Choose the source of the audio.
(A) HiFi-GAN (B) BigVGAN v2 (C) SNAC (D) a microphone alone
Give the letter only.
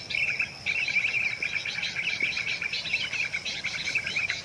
D